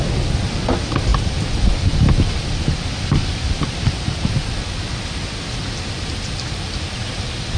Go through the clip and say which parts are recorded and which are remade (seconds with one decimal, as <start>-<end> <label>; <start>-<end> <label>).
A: 0.0-7.6 recorded

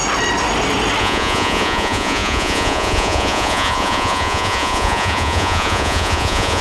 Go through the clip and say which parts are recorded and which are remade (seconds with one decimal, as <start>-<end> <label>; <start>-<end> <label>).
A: 0.0-1.0 recorded; 1.0-6.6 remade

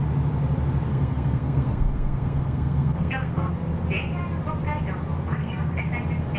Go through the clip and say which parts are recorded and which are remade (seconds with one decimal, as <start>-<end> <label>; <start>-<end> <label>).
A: 0.0-0.9 recorded; 0.9-3.5 remade; 3.5-5.3 recorded; 5.3-5.9 remade; 5.9-6.4 recorded

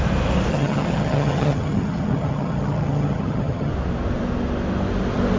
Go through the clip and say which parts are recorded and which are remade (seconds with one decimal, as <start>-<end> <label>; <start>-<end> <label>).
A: 0.0-0.5 recorded; 0.5-3.7 remade; 3.7-5.4 recorded

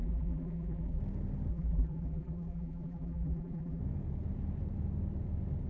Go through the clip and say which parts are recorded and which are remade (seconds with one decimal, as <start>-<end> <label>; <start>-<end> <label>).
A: 0.0-1.0 remade; 1.0-1.5 recorded; 1.5-3.8 remade; 3.8-5.7 recorded